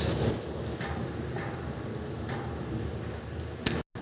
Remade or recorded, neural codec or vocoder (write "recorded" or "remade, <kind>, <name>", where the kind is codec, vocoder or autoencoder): recorded